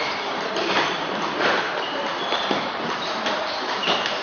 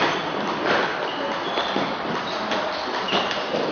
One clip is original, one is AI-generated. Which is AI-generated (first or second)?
first